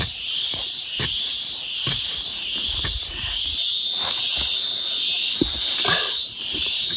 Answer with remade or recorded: remade